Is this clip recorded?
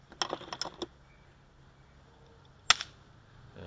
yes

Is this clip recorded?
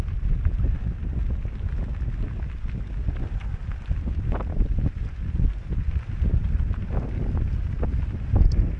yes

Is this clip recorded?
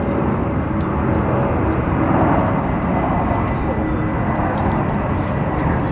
yes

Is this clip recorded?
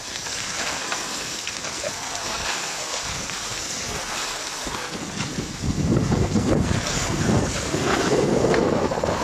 no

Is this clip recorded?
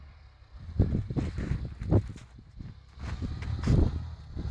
yes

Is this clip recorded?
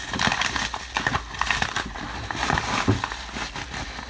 yes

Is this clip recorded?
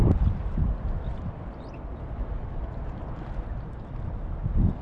no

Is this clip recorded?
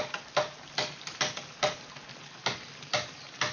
yes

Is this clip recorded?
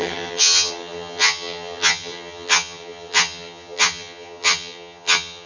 no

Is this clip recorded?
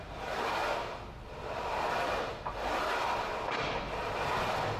yes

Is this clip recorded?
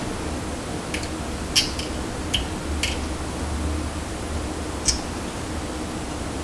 yes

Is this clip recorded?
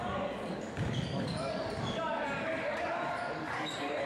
no